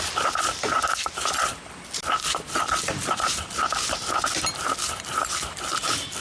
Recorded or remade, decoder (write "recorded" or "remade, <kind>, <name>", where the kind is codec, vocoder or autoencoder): recorded